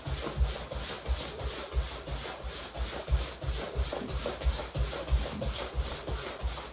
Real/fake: real